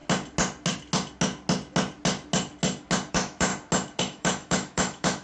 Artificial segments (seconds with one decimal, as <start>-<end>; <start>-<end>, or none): 3.1-3.5; 4.0-5.2